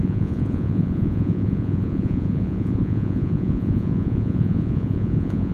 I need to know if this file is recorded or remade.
remade